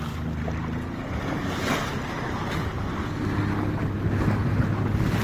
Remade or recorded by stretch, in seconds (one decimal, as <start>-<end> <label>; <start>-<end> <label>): 0.0-5.2 recorded